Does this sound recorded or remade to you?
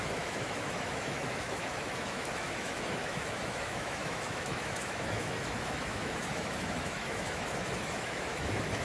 remade